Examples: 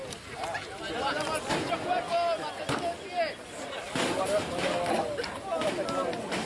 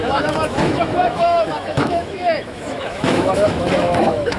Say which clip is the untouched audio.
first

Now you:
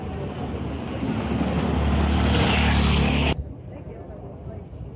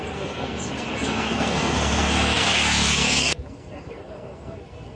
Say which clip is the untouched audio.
first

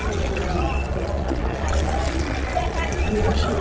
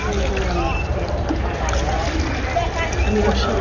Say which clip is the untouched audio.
second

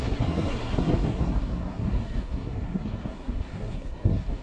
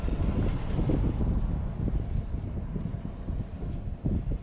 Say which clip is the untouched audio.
second